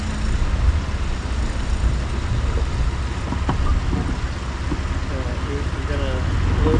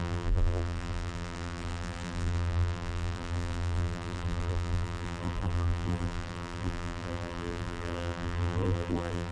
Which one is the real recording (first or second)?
first